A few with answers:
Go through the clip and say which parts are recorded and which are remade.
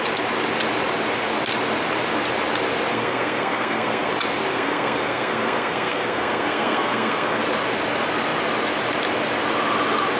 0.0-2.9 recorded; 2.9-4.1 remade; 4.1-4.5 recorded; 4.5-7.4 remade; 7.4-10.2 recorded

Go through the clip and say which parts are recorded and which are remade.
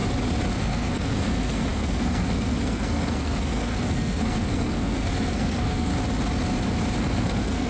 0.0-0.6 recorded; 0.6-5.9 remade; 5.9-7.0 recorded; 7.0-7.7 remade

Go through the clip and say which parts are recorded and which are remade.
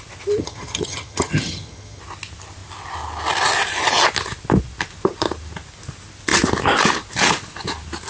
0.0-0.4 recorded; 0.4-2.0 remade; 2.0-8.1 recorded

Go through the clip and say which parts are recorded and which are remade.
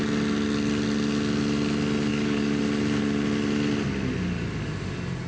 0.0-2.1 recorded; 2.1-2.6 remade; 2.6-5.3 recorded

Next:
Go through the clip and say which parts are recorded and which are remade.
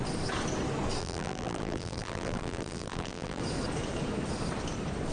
0.0-1.0 recorded; 1.0-3.4 remade; 3.4-5.1 recorded